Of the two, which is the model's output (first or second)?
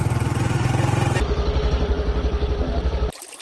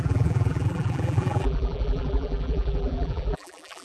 second